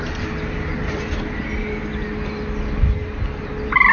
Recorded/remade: recorded